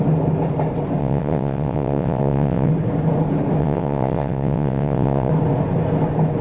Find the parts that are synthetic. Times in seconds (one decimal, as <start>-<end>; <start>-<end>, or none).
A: 1.0-2.7; 3.6-5.3